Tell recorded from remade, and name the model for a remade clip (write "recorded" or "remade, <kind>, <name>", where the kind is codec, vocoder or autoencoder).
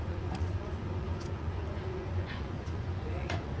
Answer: remade, vocoder, Vocos